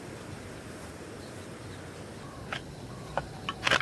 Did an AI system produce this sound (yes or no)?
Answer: no